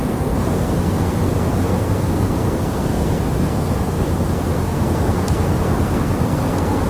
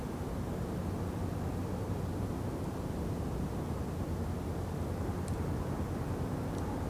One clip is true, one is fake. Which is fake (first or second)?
first